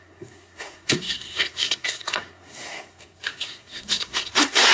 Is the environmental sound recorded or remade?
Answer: remade